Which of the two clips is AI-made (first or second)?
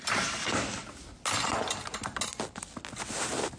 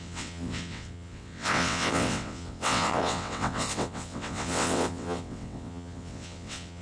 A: second